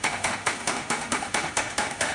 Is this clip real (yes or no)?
no